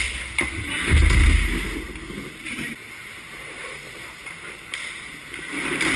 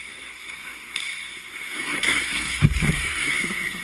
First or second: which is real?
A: first